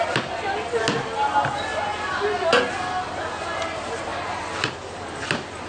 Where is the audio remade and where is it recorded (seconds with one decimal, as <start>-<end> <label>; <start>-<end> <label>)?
0.0-5.7 recorded